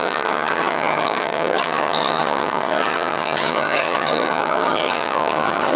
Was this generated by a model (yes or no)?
yes